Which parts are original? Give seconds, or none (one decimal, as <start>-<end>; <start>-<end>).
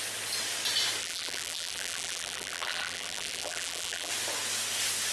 0.0-1.0; 4.1-5.1